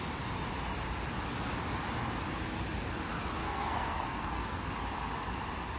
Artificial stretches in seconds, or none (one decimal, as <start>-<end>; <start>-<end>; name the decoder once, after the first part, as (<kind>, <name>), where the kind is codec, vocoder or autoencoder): 3.4-4.7 (codec, SNAC)